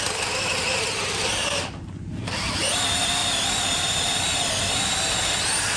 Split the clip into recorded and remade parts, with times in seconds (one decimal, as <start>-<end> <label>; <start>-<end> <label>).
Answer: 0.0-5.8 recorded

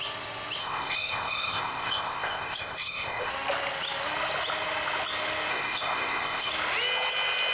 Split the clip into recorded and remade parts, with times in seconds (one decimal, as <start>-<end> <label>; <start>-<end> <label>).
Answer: 0.0-0.6 recorded; 0.6-3.3 remade; 3.3-5.5 recorded; 5.5-6.5 remade; 6.5-7.5 recorded

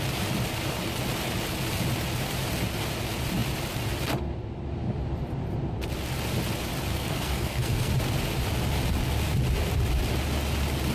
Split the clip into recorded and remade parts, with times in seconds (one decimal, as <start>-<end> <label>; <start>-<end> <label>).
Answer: 0.0-6.9 recorded; 6.9-7.9 remade; 7.9-10.9 recorded

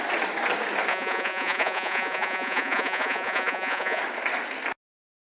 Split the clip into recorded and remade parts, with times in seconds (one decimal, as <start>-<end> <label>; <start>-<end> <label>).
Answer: 0.0-0.9 recorded; 0.9-4.0 remade; 4.0-5.2 recorded

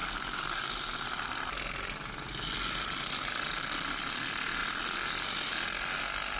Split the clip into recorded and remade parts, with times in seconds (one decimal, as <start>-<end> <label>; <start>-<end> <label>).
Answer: 0.0-6.4 recorded

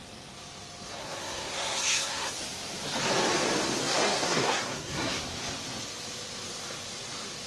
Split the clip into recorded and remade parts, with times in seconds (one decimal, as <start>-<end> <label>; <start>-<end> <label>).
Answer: 0.0-1.0 recorded; 1.0-2.3 remade; 2.3-3.8 recorded; 3.8-5.2 remade; 5.2-7.5 recorded